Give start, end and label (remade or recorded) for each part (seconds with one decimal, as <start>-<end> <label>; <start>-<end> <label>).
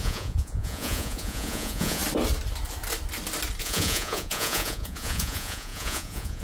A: 0.0-2.0 remade; 2.0-3.6 recorded; 3.6-6.4 remade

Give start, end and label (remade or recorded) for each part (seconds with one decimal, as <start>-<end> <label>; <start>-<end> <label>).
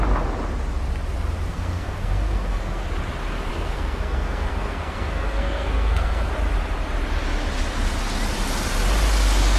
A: 0.0-1.5 recorded; 1.5-2.8 remade; 2.8-3.5 recorded; 3.5-6.3 remade; 6.3-9.6 recorded